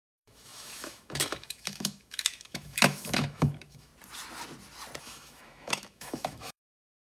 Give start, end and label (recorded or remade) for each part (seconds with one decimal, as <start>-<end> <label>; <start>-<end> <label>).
0.0-3.9 remade; 3.9-5.0 recorded; 5.0-7.1 remade